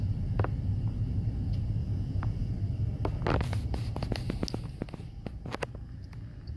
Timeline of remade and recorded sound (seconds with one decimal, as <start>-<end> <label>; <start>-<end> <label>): 0.0-1.8 recorded; 1.8-2.5 remade; 2.5-6.6 recorded